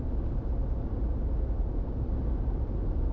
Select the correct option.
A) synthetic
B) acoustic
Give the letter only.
B